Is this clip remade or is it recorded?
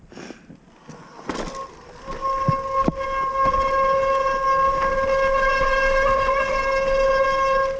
recorded